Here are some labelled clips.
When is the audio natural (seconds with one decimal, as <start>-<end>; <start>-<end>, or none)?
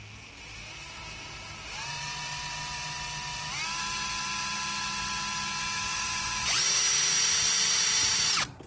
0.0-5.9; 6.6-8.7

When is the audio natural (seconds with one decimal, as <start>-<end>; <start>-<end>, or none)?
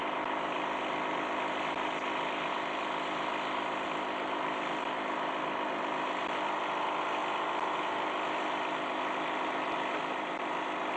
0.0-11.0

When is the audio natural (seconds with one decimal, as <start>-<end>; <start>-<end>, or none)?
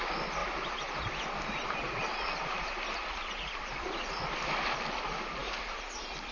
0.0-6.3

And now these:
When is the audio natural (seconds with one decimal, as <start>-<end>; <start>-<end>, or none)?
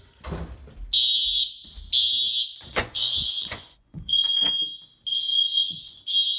0.0-2.5; 4.5-5.1; 6.0-6.4